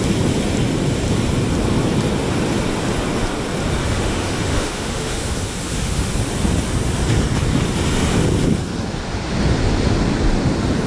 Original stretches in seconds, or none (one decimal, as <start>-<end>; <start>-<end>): 0.0-3.8; 6.1-10.9